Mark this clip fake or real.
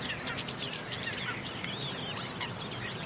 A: real